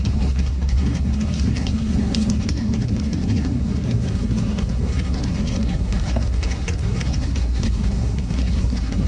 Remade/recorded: remade